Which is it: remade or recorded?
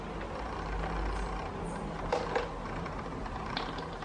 recorded